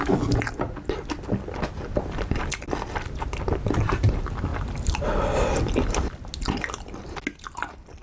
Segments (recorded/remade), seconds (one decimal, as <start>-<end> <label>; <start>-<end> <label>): 0.0-8.0 recorded